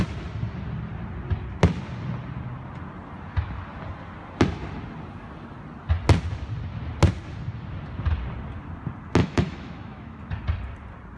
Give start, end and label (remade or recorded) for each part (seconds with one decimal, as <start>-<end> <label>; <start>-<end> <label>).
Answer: 0.0-9.2 recorded; 9.2-10.2 remade; 10.2-11.2 recorded